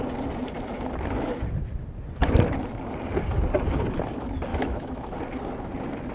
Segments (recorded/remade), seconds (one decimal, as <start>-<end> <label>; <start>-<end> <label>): 0.0-4.5 recorded; 4.5-5.2 remade; 5.2-6.1 recorded